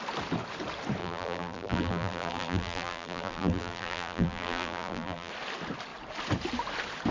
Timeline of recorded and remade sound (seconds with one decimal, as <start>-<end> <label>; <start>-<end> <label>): 0.0-1.0 recorded; 1.0-5.3 remade; 5.3-7.1 recorded